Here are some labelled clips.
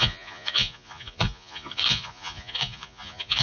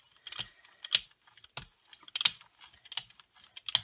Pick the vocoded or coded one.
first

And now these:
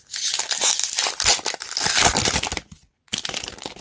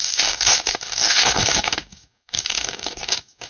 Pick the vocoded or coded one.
second